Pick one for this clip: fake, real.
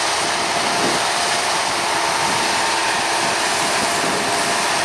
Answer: real